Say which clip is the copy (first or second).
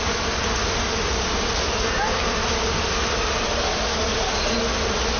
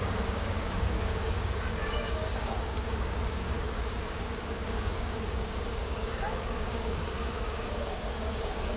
second